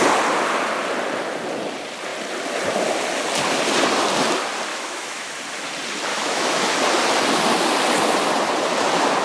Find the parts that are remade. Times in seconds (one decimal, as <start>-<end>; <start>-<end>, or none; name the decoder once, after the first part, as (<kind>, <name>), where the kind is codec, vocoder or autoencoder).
4.7-5.3 (autoencoder, DAC-VAE); 6.1-6.7